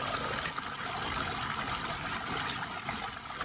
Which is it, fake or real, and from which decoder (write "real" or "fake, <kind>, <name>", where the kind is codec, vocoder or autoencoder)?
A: real